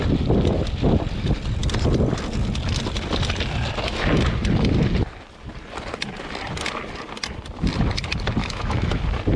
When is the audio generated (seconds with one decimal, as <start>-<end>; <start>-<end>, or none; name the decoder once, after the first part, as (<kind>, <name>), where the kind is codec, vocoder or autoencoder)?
8.4-9.0 (autoencoder, DAC-VAE)